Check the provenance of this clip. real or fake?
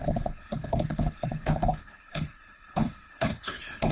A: fake